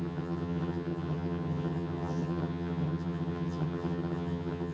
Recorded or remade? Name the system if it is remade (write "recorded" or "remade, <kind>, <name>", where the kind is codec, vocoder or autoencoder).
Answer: remade, vocoder, HiFi-GAN